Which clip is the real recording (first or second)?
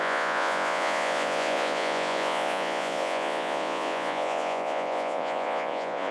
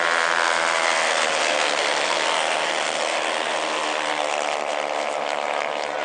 second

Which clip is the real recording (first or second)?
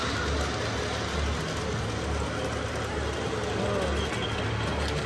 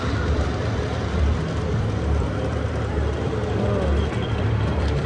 first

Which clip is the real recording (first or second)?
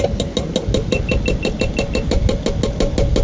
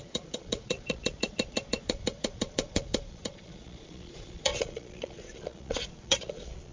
first